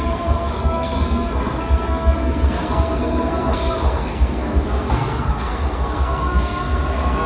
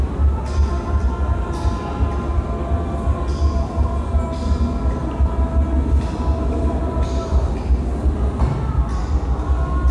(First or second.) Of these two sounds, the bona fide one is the second